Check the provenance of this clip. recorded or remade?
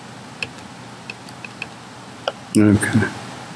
recorded